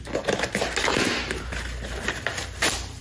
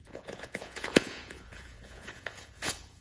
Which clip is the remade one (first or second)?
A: second